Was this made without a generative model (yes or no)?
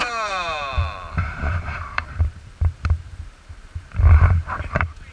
no